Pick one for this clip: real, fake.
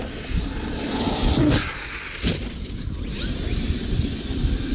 real